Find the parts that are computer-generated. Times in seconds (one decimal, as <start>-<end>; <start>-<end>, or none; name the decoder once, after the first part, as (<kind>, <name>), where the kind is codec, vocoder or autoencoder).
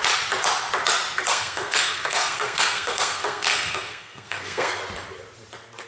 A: 1.3-4.8 (codec, SNAC)